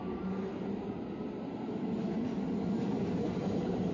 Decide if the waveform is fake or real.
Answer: real